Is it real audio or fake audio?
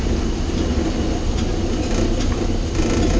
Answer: real